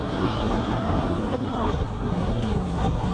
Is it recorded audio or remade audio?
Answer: remade